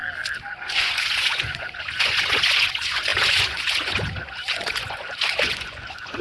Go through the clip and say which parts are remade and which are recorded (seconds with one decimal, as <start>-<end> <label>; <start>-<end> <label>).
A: 0.0-0.5 recorded; 0.5-6.2 remade